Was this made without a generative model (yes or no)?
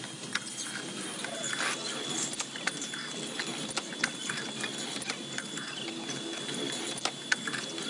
yes